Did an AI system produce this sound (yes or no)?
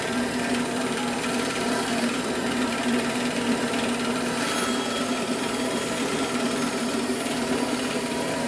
yes